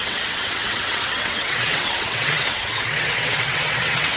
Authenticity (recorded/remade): remade